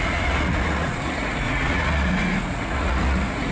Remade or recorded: remade